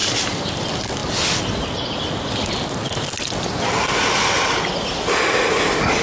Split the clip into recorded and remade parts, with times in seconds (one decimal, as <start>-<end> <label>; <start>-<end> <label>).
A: 0.0-0.6 remade; 0.6-6.0 recorded